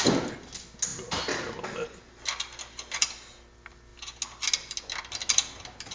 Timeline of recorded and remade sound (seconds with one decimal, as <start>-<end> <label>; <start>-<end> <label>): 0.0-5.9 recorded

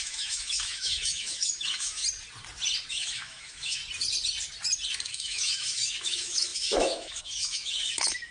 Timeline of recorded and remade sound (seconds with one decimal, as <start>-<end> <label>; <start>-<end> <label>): 0.0-2.0 remade; 2.0-2.9 recorded; 2.9-3.8 remade; 3.8-5.1 recorded; 5.1-8.3 remade

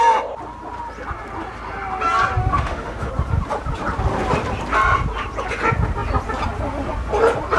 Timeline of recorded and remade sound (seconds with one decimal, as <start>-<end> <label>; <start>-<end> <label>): 0.0-2.4 recorded; 2.4-3.1 remade; 3.1-7.6 recorded